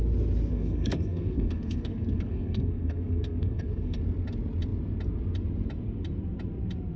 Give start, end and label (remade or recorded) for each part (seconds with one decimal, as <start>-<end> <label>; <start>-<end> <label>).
0.0-0.5 recorded; 0.5-4.0 remade; 4.0-7.0 recorded